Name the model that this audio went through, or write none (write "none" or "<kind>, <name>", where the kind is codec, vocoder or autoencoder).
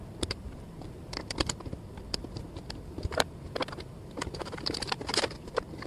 vocoder, BigVGAN v2